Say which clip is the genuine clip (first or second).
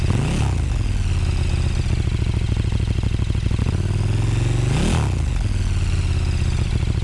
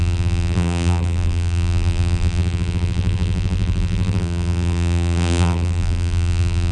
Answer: first